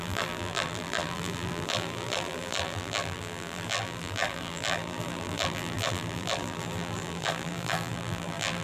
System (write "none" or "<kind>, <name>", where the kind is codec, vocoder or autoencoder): vocoder, BigVGAN v2